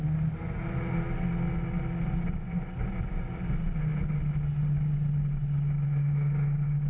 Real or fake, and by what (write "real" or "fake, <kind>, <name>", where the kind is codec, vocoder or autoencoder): real